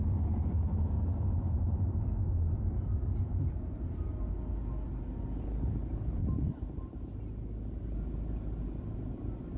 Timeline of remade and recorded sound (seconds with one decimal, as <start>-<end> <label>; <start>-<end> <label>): 0.0-2.9 recorded; 2.9-4.1 remade; 4.1-9.6 recorded